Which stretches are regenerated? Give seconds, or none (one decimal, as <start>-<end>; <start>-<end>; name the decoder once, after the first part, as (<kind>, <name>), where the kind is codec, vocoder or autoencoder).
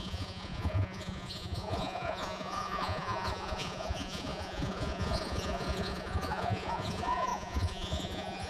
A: 0.0-8.5 (vocoder, Vocos)